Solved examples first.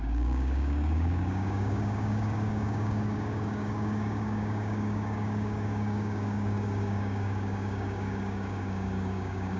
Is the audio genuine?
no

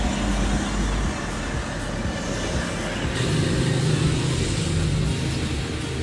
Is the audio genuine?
yes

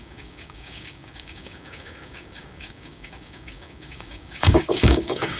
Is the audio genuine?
no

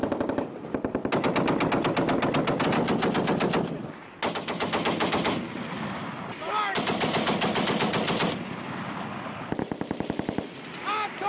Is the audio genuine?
yes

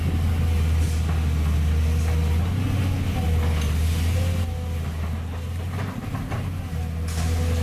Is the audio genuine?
yes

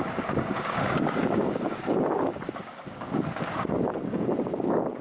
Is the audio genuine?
no